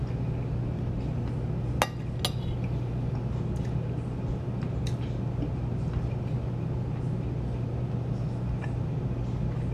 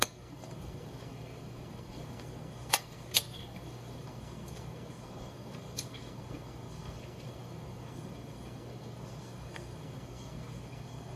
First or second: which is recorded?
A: first